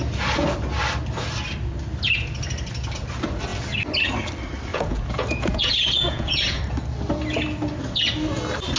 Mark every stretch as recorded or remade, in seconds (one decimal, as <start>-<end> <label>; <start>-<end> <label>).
0.0-4.7 recorded; 4.7-6.6 remade; 6.6-8.8 recorded